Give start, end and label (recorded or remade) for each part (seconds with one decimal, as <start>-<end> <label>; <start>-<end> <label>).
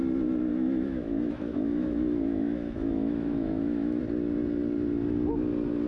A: 0.0-0.5 recorded; 0.5-4.0 remade; 4.0-5.9 recorded